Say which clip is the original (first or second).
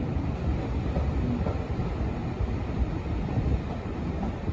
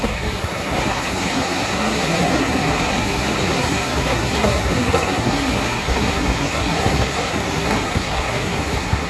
first